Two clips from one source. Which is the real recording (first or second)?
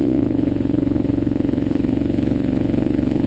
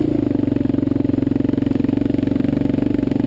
second